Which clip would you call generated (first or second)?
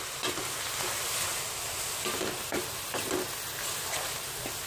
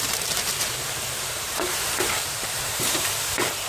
second